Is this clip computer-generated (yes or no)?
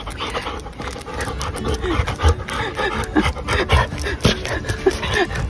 no